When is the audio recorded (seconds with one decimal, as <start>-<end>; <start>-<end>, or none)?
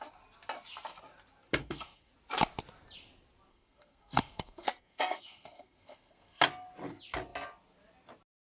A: 0.0-1.6; 2.1-3.5; 6.4-8.4